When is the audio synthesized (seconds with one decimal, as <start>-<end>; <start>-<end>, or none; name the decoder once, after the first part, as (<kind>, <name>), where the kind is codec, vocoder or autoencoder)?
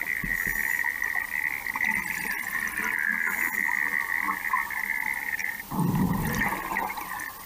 none